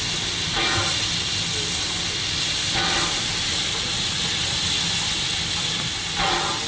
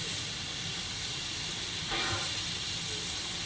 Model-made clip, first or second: second